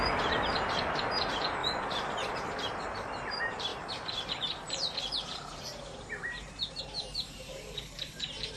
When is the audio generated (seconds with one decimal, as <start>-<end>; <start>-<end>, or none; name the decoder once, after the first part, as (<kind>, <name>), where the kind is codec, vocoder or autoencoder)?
0.0-1.6 (vocoder, BigVGAN v2); 2.3-8.6